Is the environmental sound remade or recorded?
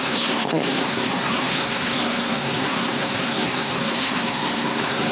remade